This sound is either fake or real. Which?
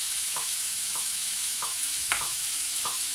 fake